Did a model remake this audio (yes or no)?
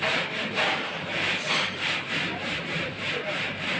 yes